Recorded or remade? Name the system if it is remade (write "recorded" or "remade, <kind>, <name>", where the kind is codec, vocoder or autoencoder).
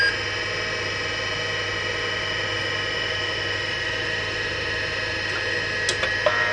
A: recorded